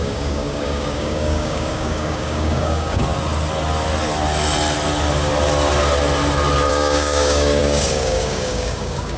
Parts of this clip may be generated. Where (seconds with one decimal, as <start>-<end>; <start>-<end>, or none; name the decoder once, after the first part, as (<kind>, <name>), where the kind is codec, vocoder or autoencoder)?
0.0-3.0 (codec, DAC); 6.7-9.2